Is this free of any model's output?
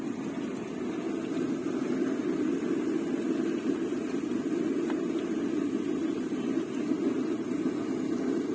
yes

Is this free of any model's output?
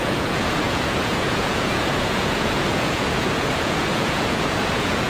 no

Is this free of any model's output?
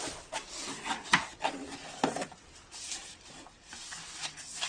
yes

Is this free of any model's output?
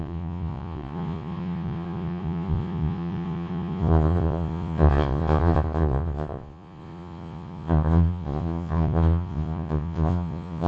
no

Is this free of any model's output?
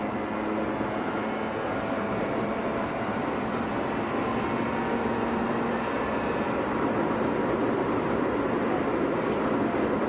yes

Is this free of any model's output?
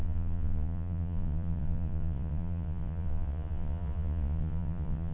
no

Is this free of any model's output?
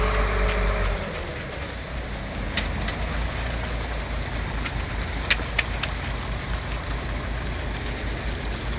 yes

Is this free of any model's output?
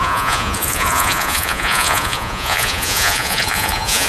no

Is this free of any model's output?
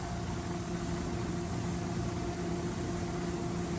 yes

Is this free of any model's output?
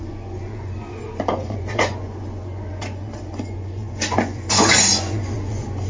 no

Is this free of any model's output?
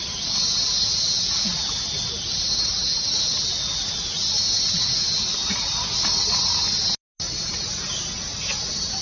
yes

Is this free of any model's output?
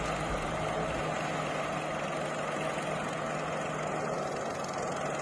yes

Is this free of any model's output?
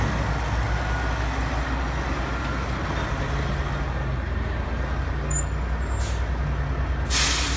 yes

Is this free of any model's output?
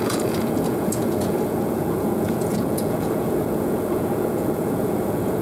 no